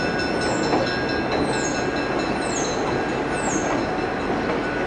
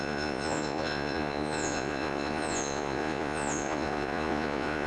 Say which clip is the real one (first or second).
first